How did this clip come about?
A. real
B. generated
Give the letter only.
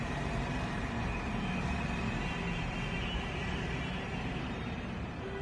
B